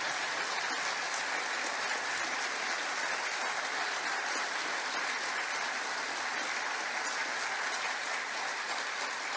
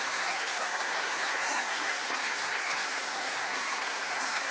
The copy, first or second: second